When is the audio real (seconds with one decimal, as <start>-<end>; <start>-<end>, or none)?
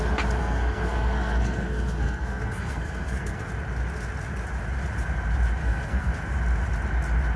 0.0-0.4; 3.5-5.6; 6.1-7.4